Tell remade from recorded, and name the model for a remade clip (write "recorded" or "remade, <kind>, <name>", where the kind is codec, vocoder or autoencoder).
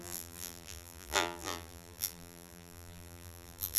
remade, vocoder, BigVGAN v2